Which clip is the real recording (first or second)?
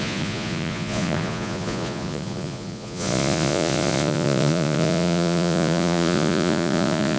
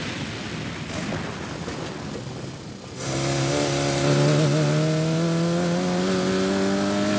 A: second